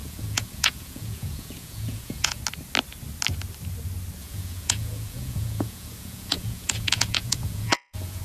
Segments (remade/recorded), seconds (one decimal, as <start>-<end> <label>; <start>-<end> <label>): 0.0-2.4 remade; 2.4-4.2 recorded; 4.2-8.2 remade